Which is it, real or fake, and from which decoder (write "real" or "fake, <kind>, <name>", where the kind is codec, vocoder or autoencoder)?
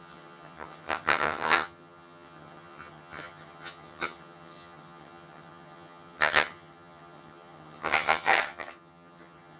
fake, vocoder, HiFi-GAN